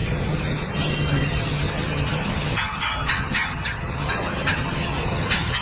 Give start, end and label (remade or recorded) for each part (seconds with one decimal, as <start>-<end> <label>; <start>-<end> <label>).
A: 0.0-5.6 remade